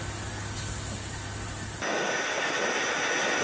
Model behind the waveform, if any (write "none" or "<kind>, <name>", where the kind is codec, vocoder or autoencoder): none